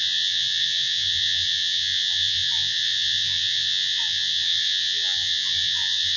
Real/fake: fake